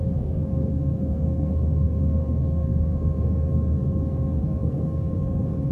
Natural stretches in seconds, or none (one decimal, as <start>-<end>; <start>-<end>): none

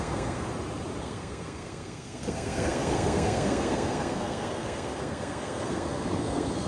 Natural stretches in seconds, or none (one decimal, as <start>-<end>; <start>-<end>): 0.5-1.0

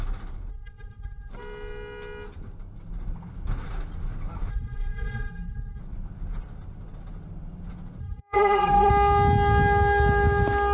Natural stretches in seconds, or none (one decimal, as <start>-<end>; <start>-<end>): 0.0-0.5; 1.3-4.5; 5.8-8.0; 8.9-10.7

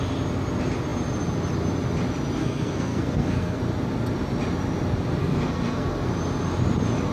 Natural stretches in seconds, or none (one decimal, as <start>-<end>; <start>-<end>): 0.0-2.4; 3.6-5.2; 6.1-7.1